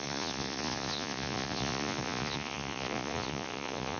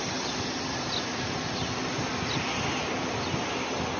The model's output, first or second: first